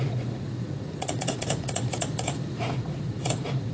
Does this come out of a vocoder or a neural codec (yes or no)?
yes